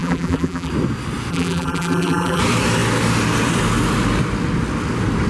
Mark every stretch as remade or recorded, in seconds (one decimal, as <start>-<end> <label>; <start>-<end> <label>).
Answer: 0.0-0.7 remade; 0.7-1.3 recorded; 1.3-2.4 remade; 2.4-5.3 recorded